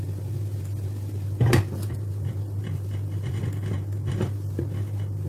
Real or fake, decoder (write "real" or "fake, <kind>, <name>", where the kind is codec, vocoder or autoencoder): real